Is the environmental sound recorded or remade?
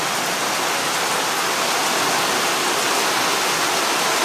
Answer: recorded